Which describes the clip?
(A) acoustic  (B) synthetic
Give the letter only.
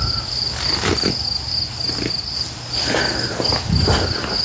A